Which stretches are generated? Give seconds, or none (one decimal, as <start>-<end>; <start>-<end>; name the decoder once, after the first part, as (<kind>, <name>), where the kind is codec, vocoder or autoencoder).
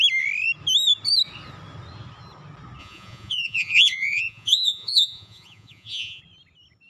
2.8-6.2 (vocoder, Vocos)